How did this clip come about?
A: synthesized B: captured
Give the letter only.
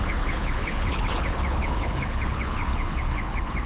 A